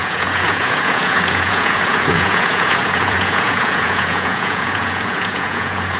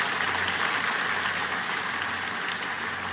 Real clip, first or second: second